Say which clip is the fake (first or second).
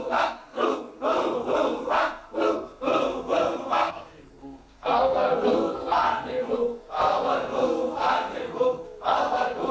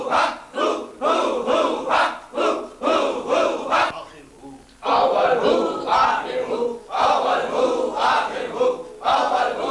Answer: first